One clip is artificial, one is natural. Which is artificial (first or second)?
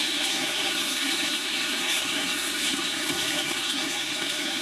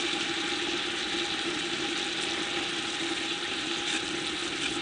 first